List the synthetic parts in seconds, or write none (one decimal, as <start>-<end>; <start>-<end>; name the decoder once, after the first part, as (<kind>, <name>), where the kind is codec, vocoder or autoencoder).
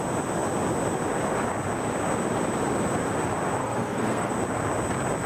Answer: 3.6-4.3 (codec, SNAC)